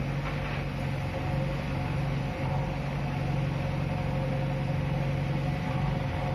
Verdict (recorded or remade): recorded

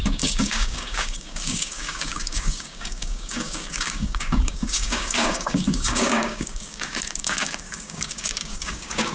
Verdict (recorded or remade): remade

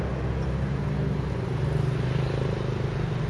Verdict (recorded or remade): recorded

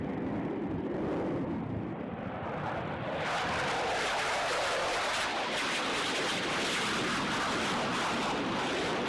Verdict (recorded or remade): remade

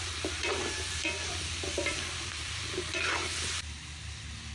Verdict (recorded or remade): remade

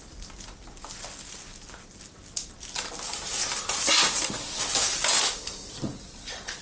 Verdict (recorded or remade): recorded